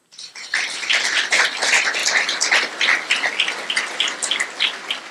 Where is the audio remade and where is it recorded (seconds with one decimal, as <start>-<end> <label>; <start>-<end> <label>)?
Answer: 0.0-2.0 remade; 2.0-5.1 recorded